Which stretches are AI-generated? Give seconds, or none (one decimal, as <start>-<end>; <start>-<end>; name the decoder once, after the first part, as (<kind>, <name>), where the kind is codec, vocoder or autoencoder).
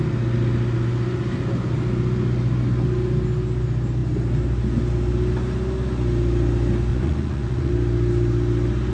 6.9-7.7 (vocoder, Vocos)